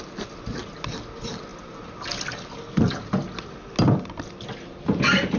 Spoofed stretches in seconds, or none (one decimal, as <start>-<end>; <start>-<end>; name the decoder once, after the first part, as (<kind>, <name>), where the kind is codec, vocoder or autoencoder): none